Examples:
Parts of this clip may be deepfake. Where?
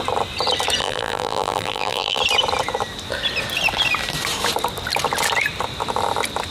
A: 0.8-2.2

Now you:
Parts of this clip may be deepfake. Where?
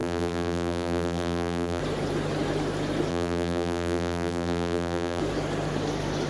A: 0.0-1.8; 3.1-5.2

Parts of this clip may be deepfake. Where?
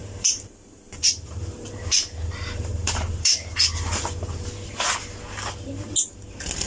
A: 0.0-4.0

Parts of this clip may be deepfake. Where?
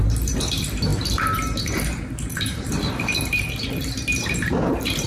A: 0.0-5.1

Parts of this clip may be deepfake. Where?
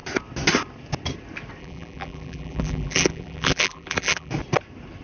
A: 1.6-4.3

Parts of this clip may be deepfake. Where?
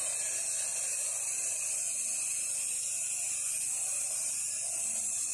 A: 0.7-1.6; 3.9-5.3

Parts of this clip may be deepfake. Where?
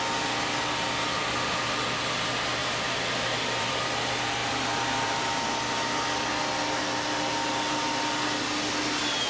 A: 2.6-3.7; 4.4-5.5